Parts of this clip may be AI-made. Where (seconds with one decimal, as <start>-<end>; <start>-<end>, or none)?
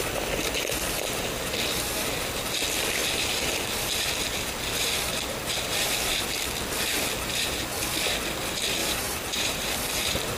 8.8-9.7